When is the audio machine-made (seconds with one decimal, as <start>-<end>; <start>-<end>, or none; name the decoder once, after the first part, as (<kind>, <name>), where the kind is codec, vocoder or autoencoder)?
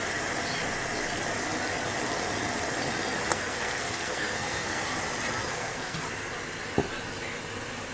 3.3-4.8 (codec, SNAC); 5.4-6.1